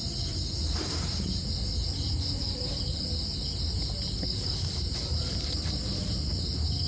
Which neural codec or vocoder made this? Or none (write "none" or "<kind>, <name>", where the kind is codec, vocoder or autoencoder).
none